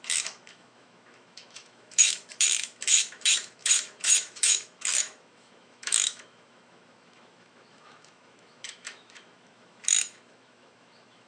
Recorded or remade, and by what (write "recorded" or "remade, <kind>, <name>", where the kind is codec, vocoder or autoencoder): remade, autoencoder, DAC-VAE